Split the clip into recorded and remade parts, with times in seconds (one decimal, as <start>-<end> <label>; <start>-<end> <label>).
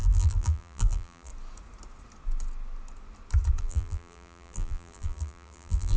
0.0-1.3 remade; 1.3-3.6 recorded; 3.6-6.0 remade